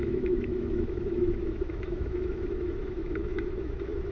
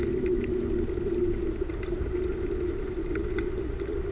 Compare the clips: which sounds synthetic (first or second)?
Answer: first